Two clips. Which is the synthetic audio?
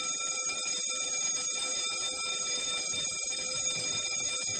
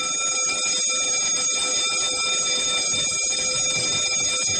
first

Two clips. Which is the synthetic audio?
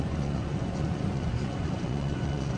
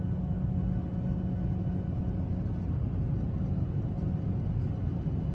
first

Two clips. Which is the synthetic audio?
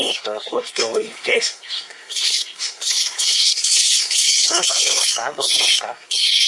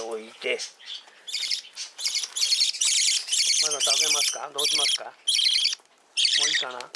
first